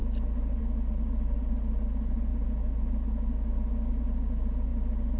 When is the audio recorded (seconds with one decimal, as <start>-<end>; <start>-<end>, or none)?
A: 0.0-5.2